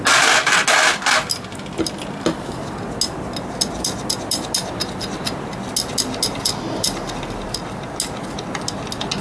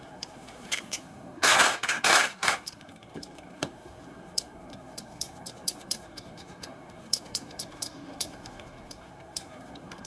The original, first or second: first